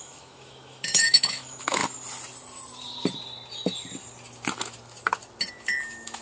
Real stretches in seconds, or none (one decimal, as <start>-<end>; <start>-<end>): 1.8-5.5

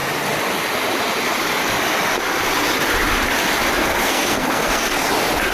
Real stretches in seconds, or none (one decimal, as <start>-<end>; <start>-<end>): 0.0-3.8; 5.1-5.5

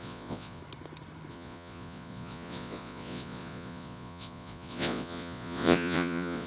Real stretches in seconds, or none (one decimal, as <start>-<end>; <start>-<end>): 0.6-1.3

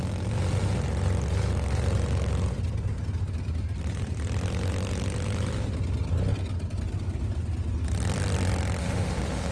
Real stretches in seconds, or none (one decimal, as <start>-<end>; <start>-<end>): 0.0-8.8

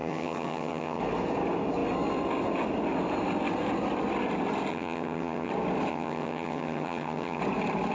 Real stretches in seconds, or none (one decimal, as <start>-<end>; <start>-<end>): 1.0-4.7; 5.5-5.9; 7.4-7.9

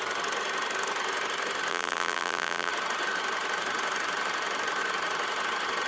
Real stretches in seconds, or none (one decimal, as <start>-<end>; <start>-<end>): 0.0-1.7; 2.7-5.9